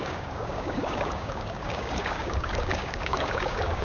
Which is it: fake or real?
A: fake